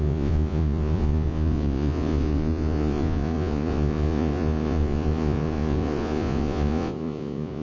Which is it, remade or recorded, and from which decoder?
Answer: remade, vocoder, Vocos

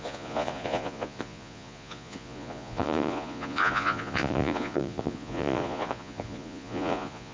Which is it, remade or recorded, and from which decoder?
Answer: remade, vocoder, Vocos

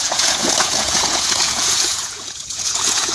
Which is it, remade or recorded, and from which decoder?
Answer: remade, vocoder, Vocos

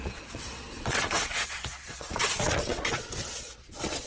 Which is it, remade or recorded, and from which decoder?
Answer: remade, vocoder, Vocos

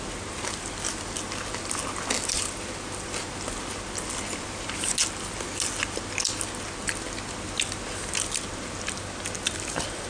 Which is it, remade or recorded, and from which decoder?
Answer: recorded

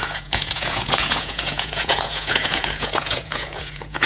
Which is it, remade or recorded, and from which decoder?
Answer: remade, vocoder, Vocos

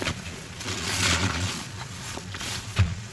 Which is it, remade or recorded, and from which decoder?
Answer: remade, vocoder, Vocos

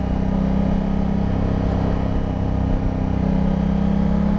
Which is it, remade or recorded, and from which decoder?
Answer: recorded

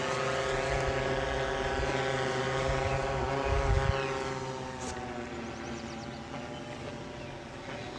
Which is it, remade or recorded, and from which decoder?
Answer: recorded